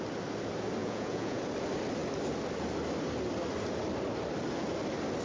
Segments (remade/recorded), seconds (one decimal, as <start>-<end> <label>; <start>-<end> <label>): 0.0-0.8 recorded; 0.8-1.4 remade; 1.4-5.2 recorded